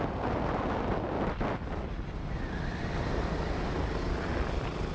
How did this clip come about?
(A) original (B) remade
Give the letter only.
A